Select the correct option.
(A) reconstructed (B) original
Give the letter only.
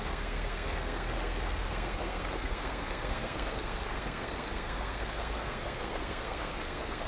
A